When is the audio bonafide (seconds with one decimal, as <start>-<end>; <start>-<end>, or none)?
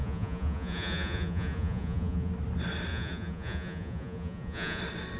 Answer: 2.3-2.9; 4.8-5.2